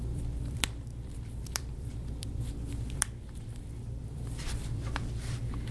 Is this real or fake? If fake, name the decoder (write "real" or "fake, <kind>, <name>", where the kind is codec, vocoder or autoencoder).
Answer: fake, vocoder, BigVGAN v2